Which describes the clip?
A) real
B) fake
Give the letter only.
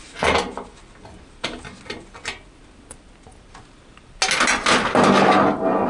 A